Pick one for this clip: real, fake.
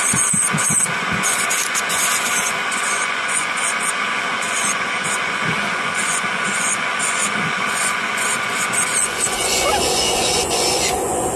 fake